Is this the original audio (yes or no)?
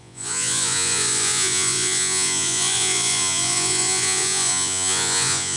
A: no